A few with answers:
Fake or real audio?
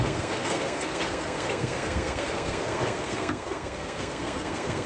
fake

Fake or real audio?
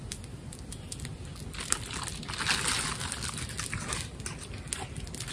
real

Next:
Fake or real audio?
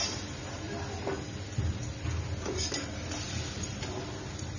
real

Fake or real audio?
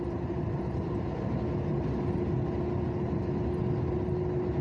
real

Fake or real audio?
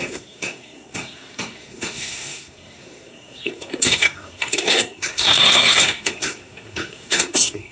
fake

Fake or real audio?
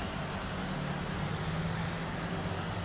real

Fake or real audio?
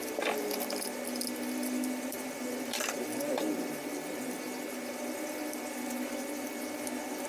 fake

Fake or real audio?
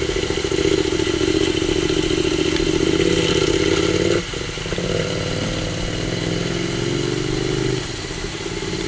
real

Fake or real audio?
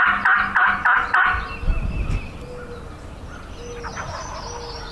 real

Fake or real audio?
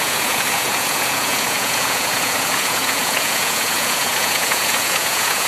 fake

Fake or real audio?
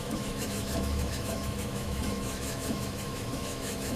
fake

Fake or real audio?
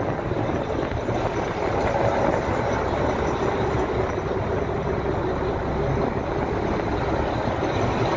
real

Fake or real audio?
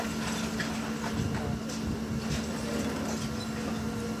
real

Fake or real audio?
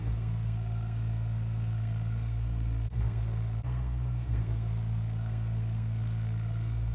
fake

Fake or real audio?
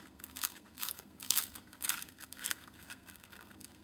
fake